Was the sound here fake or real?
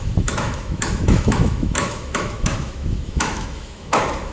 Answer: fake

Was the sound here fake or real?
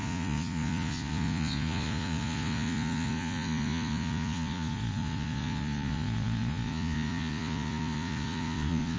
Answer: fake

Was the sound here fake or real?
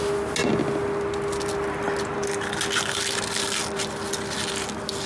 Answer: real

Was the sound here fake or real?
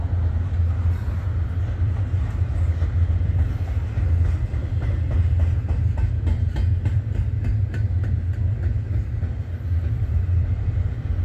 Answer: real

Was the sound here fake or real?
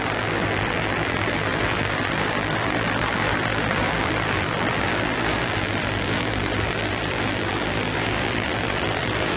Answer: fake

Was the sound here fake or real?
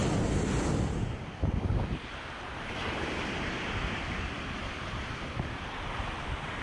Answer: real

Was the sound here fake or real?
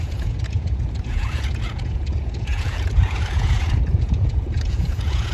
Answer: fake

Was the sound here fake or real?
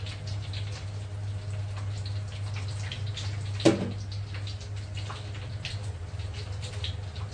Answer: real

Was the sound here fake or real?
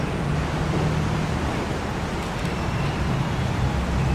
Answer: real